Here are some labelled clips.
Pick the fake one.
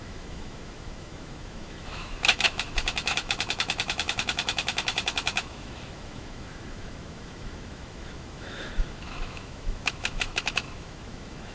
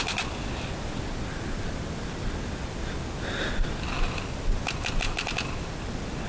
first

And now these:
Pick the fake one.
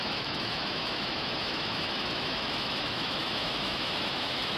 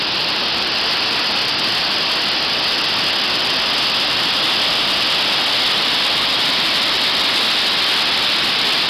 first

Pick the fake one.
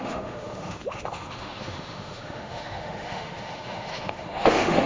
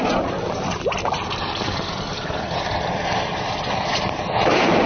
first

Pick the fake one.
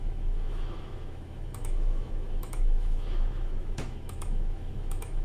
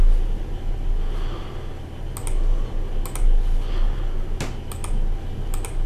first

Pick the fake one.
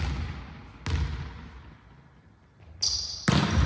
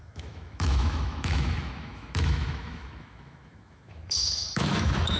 second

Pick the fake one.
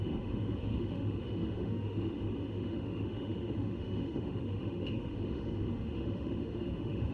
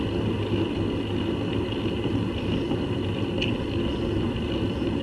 first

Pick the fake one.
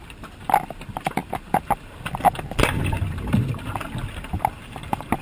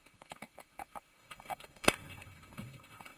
second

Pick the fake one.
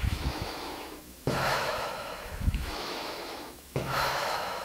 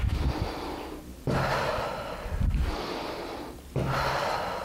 first